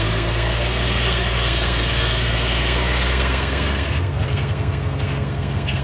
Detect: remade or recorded remade